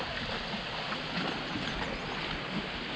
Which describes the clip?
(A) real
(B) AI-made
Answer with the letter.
A